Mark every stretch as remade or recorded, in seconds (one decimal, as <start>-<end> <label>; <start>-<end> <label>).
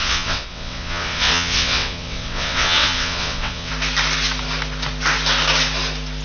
0.0-3.7 remade; 3.7-6.2 recorded